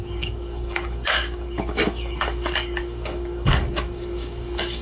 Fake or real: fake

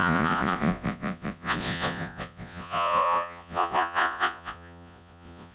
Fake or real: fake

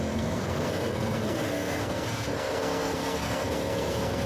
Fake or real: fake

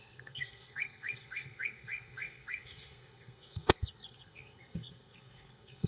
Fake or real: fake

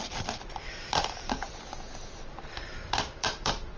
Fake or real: fake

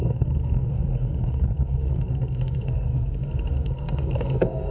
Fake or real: fake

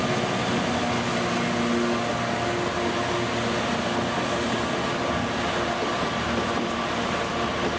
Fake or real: real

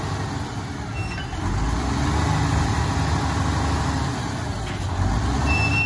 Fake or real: real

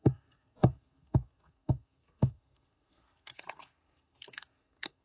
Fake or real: fake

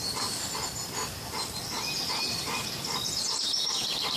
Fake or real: real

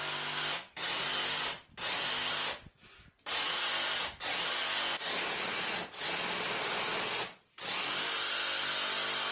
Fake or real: real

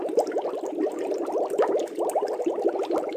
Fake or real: real